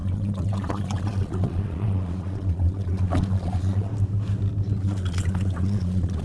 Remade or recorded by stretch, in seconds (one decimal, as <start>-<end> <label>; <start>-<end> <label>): 0.0-3.9 remade; 3.9-4.8 recorded; 4.8-6.2 remade